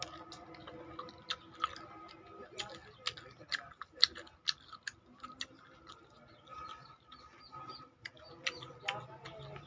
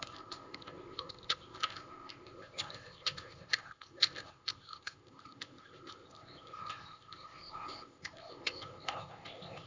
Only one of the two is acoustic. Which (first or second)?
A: first